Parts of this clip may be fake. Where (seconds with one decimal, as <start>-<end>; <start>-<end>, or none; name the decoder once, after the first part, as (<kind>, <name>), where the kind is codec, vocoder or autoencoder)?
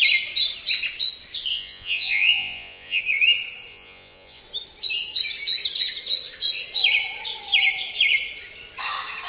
1.5-3.0 (vocoder, Vocos); 3.7-4.4